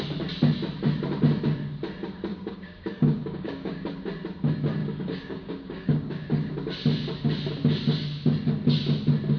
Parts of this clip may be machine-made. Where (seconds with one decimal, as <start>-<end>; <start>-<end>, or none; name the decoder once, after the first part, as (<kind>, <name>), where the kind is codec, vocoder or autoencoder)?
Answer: 2.3-3.9 (codec, DAC); 4.8-6.5